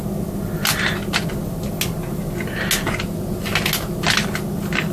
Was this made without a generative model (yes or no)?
yes